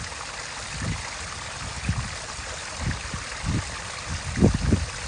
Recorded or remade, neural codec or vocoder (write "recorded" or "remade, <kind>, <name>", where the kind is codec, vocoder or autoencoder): recorded